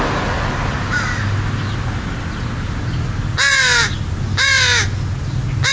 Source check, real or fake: real